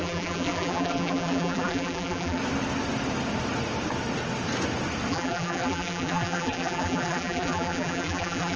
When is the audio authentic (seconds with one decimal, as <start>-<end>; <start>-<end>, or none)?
2.4-5.1